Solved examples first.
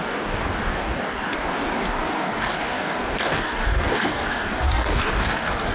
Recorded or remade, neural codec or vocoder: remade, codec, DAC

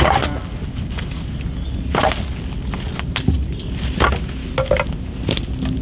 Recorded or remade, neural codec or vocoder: recorded